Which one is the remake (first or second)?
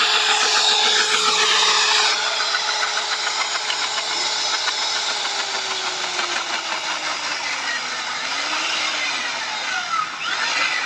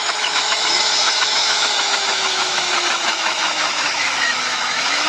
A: second